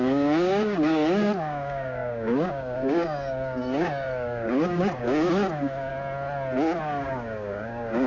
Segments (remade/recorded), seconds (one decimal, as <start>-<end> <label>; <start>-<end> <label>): 0.0-5.9 remade; 5.9-6.8 recorded; 6.8-8.1 remade